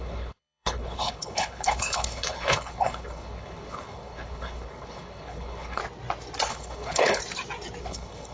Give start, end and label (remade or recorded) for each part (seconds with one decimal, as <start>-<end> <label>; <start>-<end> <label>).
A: 0.0-5.8 remade; 5.8-6.5 recorded; 6.5-7.2 remade; 7.2-7.8 recorded; 7.8-8.3 remade